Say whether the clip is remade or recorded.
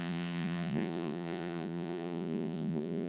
remade